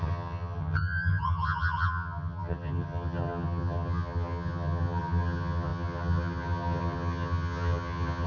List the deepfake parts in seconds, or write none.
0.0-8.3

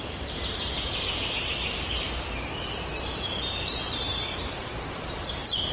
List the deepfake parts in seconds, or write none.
0.0-5.7